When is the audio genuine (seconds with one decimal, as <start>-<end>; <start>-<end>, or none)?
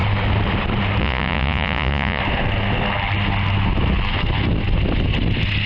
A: 0.0-1.0; 2.2-5.7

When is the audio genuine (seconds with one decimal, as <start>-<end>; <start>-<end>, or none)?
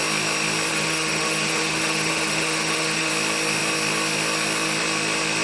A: 0.0-0.7; 3.1-5.4